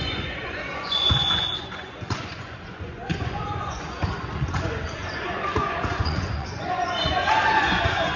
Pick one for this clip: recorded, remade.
remade